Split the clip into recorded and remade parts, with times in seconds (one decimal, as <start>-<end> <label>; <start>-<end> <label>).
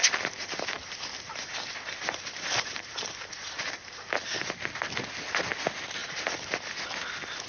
0.0-4.5 remade; 4.5-6.0 recorded; 6.0-6.8 remade; 6.8-7.5 recorded